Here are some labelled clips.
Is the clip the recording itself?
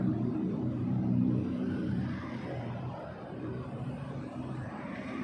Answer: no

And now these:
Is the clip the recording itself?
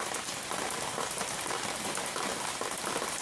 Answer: yes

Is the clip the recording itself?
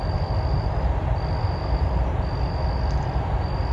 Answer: no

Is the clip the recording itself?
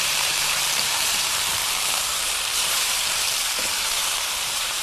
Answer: no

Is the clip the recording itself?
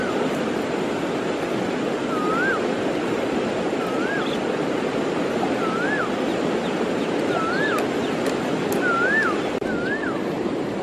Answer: yes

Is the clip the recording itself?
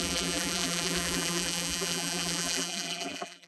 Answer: no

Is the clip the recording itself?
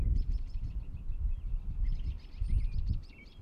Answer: no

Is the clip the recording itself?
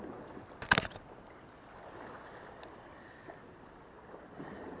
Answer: yes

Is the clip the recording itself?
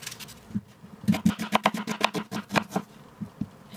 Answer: yes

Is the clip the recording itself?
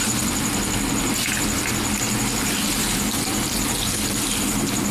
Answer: yes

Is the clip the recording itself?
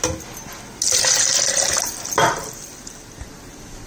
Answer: yes